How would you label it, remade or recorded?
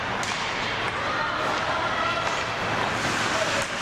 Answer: recorded